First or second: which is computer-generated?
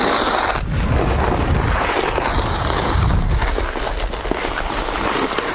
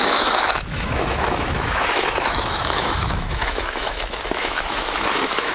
second